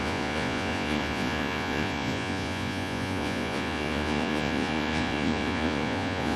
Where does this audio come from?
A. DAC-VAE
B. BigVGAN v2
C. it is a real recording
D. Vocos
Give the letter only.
D